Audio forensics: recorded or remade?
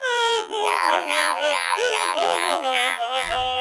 remade